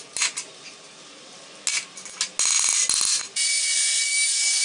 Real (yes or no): yes